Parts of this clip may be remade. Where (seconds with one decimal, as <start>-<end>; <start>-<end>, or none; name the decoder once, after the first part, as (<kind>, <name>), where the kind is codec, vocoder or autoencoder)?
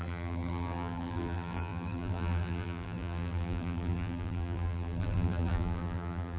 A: 0.0-6.4 (vocoder, BigVGAN v2)